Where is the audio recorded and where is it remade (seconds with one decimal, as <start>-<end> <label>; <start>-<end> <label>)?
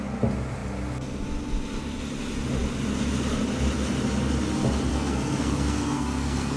0.0-4.9 recorded; 4.9-6.6 remade